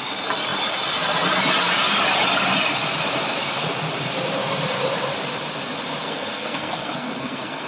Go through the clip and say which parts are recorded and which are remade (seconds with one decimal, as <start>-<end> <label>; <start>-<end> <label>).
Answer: 0.0-6.0 recorded; 6.0-7.7 remade